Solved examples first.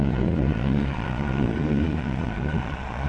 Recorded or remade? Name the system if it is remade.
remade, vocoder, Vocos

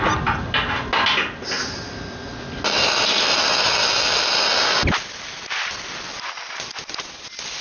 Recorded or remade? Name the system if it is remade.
recorded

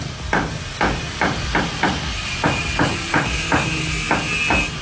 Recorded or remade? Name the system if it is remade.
recorded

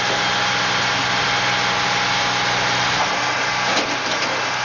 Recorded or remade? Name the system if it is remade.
recorded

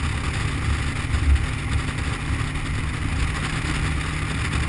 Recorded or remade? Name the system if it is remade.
recorded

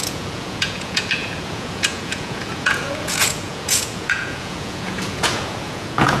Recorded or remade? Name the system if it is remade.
remade, vocoder, Vocos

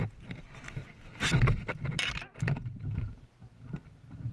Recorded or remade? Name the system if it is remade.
recorded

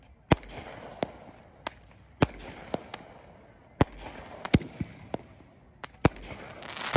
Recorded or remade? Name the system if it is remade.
recorded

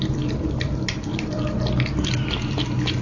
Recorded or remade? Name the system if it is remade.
recorded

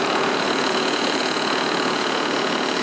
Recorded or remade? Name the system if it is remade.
remade, vocoder, Vocos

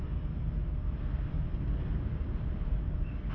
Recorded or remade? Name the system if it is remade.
recorded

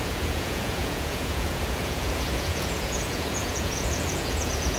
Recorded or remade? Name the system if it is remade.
remade, vocoder, Vocos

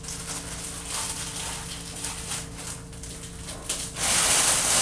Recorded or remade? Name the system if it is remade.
recorded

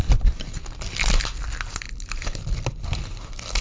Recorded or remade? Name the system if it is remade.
recorded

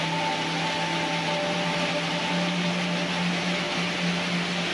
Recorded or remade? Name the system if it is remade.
recorded